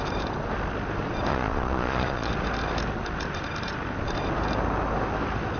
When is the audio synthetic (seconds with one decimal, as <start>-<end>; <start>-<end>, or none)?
1.3-2.3